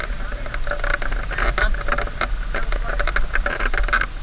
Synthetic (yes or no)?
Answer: no